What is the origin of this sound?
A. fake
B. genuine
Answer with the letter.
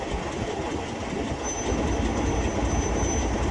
B